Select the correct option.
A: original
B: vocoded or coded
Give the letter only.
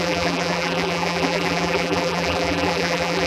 B